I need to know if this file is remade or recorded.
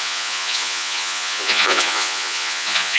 remade